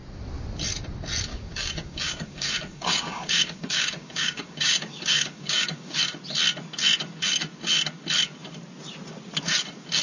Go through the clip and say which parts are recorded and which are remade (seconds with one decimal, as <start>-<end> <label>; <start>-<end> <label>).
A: 0.0-1.3 recorded; 1.3-6.0 remade; 6.0-10.0 recorded